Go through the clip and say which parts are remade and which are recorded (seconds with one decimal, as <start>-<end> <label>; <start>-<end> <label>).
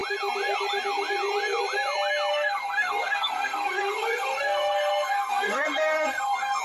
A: 0.0-2.3 recorded; 2.3-6.6 remade